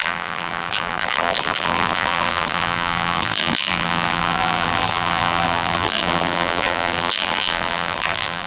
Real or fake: fake